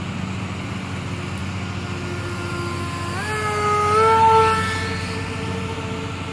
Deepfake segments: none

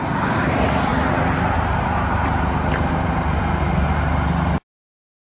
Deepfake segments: 0.9-4.1 (vocoder, BigVGAN v2)